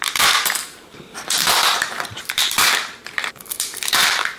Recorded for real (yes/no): no